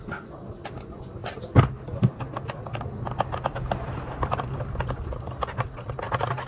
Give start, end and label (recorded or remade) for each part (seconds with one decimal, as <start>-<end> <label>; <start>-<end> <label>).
0.0-6.5 recorded